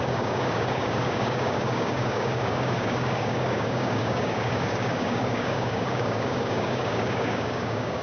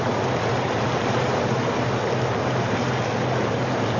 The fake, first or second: first